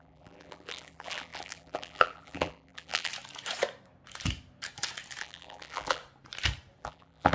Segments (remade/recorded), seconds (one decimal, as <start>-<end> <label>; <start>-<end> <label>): 0.0-3.1 remade; 3.1-5.2 recorded; 5.2-6.0 remade; 6.0-6.8 recorded; 6.8-7.3 remade